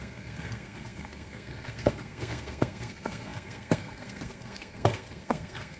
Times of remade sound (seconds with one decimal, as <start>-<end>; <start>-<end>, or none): 0.0-5.8